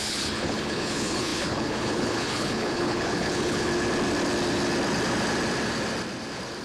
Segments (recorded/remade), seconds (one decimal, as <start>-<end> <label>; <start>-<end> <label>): 0.0-3.7 remade; 3.7-6.6 recorded